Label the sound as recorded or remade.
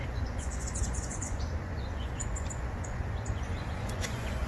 remade